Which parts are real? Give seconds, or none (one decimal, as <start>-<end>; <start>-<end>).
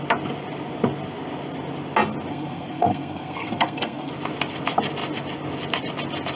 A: 0.0-2.3; 4.1-6.4